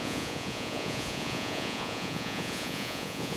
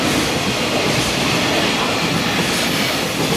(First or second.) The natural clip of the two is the second